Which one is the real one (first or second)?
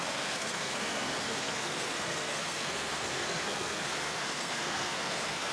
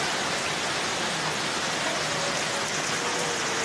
second